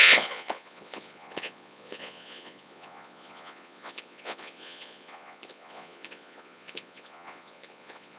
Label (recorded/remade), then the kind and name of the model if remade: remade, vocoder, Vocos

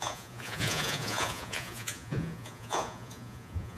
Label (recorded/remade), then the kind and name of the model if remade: remade, vocoder, Vocos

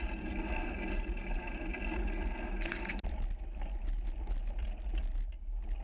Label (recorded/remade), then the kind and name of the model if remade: recorded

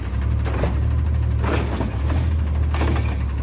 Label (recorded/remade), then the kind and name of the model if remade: recorded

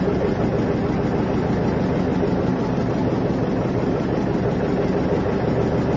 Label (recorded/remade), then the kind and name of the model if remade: recorded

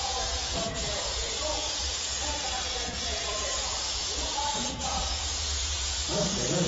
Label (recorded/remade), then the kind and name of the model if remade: remade, vocoder, Vocos